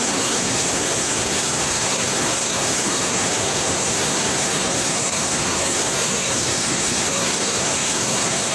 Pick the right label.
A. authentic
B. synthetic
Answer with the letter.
B